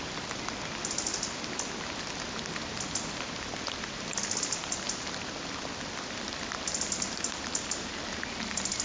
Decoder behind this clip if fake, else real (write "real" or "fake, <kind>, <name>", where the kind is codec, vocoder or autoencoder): real